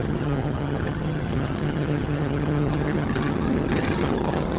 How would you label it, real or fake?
fake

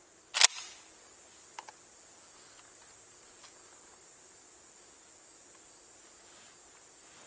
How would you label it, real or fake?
real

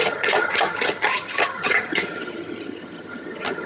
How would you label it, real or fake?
fake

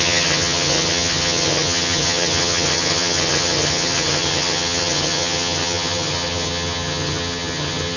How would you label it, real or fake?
fake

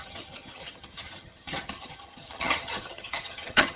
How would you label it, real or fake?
fake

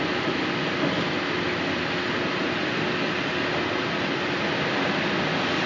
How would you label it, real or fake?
real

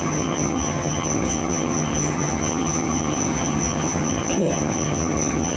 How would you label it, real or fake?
fake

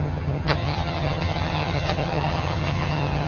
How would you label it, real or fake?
fake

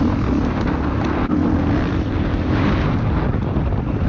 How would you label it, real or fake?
real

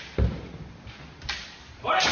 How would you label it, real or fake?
real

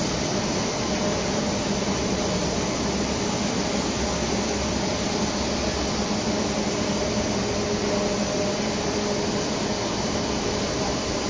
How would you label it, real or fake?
real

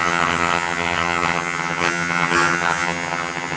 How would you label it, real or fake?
fake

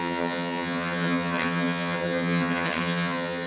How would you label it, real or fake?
fake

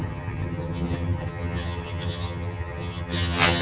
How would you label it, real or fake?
fake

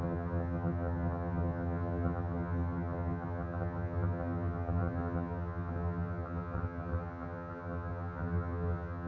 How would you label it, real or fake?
fake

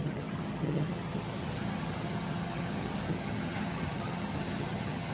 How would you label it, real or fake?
fake